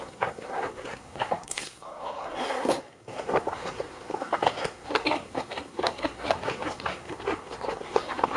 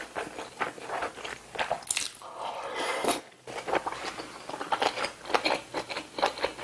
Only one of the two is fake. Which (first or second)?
first